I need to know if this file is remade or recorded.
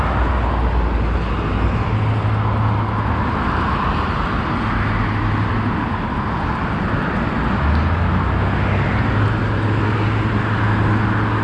recorded